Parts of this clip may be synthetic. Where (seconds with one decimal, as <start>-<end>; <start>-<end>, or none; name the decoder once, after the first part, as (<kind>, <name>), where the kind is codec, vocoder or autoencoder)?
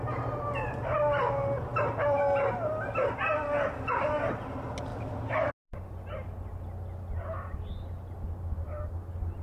1.7-2.2 (vocoder, BigVGAN v2); 4.9-5.5